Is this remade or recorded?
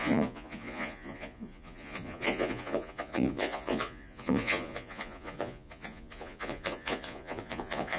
remade